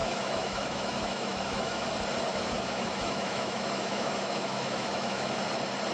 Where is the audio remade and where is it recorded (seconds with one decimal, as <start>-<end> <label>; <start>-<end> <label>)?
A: 0.0-1.8 remade; 1.8-2.3 recorded; 2.3-5.5 remade; 5.5-5.9 recorded